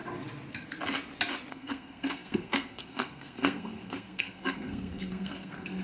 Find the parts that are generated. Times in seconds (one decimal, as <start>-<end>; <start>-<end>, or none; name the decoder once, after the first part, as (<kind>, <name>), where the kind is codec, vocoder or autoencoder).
1.5-5.8 (codec, SNAC)